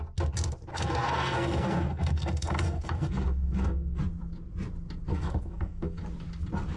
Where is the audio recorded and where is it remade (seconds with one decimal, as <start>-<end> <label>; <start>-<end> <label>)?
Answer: 0.0-0.7 recorded; 0.7-4.0 remade; 4.0-5.1 recorded; 5.1-6.0 remade; 6.0-6.8 recorded